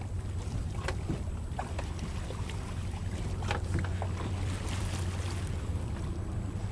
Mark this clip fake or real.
fake